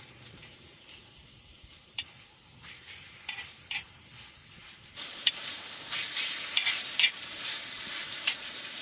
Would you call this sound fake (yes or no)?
yes